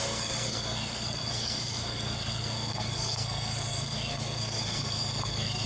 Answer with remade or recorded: remade